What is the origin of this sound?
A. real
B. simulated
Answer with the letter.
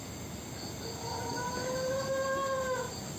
A